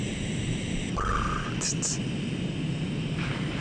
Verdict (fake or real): real